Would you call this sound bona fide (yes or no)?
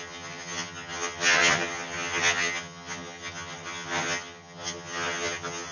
no